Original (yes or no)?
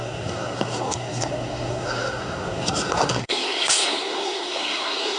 no